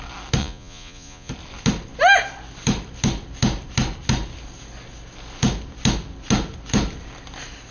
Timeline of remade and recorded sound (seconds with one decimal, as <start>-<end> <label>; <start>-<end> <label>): 0.0-0.4 recorded; 0.4-1.3 remade; 1.3-7.7 recorded